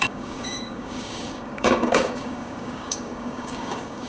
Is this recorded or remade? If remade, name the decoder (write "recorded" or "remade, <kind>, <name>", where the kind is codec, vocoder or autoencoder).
remade, codec, DAC